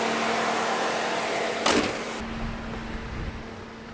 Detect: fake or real real